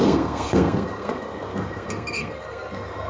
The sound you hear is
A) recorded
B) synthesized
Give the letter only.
B